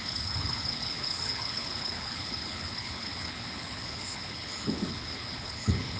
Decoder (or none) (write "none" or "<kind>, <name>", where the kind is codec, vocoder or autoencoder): codec, HILCodec